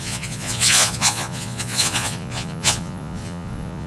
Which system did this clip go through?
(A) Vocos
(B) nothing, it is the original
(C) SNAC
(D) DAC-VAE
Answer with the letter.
A